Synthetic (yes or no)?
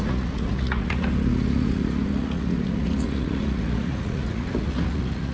yes